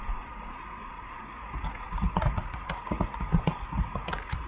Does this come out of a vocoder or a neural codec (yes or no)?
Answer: yes